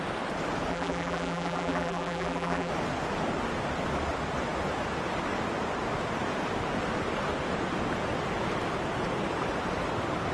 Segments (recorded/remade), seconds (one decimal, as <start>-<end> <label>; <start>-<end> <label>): 0.0-0.7 recorded; 0.7-2.7 remade; 2.7-10.3 recorded